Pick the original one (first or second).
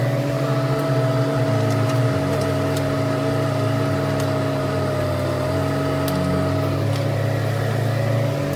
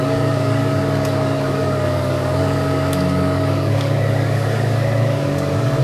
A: first